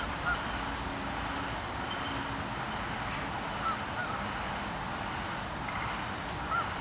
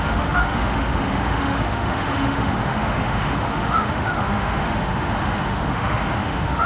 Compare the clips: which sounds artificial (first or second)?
second